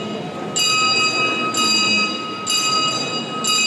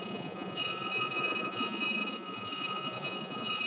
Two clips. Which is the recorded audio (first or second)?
first